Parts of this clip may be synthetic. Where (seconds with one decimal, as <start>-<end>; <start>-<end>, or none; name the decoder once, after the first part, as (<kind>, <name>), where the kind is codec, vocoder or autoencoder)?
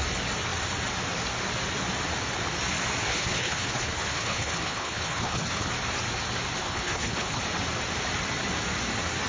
3.1-5.7 (codec, HILCodec); 6.6-7.4